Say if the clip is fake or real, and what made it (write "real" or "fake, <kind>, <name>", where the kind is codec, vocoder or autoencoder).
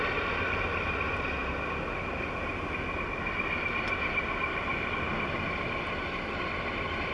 real